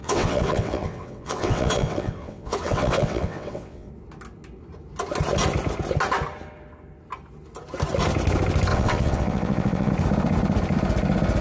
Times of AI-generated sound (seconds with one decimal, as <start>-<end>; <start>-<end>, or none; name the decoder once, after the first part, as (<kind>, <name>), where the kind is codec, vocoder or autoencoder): 0.0-3.9 (vocoder, WaveNeXt); 8.7-9.9